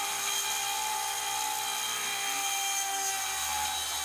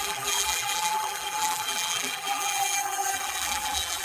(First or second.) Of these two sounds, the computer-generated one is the second